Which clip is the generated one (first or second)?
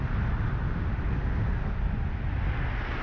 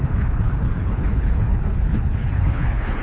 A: second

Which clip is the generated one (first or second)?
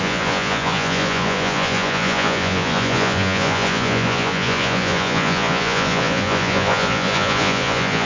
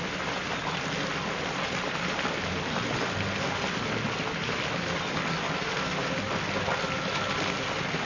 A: first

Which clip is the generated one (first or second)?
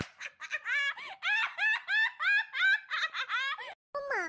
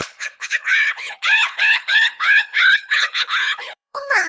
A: second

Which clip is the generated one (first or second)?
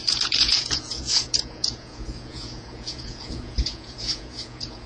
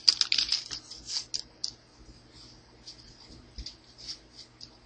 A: first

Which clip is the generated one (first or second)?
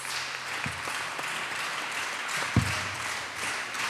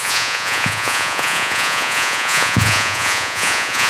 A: second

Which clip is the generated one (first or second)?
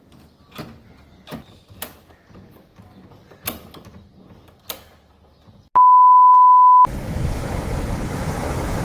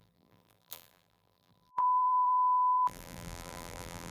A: second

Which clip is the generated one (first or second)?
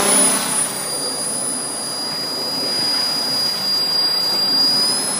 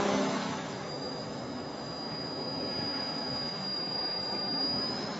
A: second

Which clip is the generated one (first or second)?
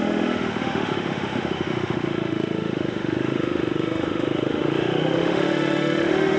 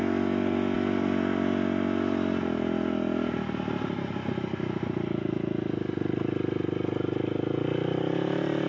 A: first